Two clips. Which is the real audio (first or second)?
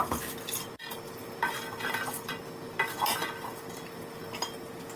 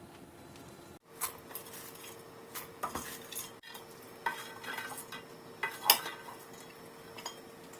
second